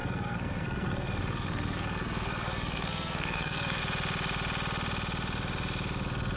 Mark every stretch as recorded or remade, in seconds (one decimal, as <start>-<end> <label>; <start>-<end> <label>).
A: 0.0-3.8 remade; 3.8-6.4 recorded